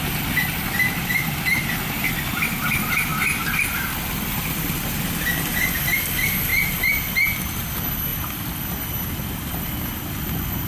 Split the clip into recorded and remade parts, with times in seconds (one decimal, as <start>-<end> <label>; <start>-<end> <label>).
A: 0.0-10.7 recorded